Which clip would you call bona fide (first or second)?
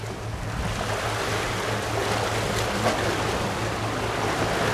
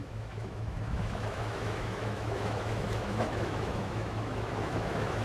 first